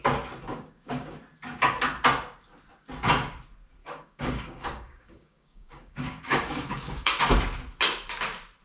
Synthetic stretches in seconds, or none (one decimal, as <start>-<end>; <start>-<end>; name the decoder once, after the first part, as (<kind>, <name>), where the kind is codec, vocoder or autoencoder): 0.5-1.2 (codec, DAC); 3.8-7.2